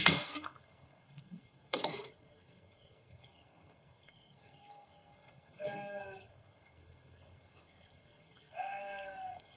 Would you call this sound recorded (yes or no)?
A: no